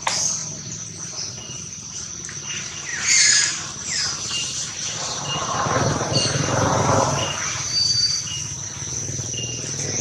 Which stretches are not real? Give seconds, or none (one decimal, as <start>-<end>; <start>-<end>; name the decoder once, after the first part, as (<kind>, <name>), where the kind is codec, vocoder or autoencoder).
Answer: 0.4-2.1 (vocoder, BigVGAN v2); 2.9-8.2